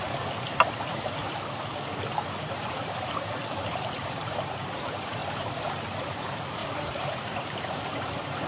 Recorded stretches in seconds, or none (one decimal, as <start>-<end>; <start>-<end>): 1.2-2.4; 5.2-6.0